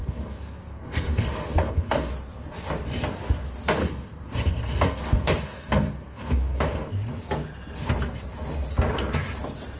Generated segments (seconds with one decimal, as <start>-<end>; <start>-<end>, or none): 0.0-2.1; 3.8-6.9